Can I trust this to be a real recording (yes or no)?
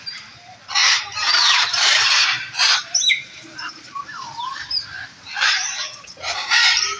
no